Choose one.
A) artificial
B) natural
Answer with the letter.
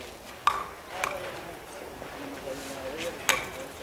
B